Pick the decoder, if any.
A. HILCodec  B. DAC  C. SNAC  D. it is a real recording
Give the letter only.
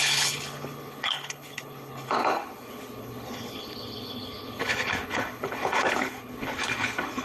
A